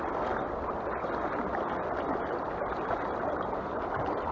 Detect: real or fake real